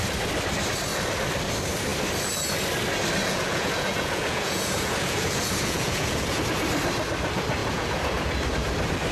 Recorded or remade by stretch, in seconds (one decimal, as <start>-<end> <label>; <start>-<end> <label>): 0.0-3.2 recorded; 3.2-6.4 remade; 6.4-7.6 recorded; 7.6-8.3 remade; 8.3-9.1 recorded